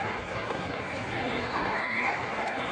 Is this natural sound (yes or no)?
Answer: no